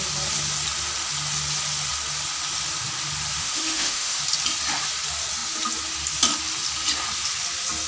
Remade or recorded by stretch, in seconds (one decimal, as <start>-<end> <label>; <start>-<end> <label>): 0.0-3.4 recorded; 3.4-4.2 remade; 4.2-7.9 recorded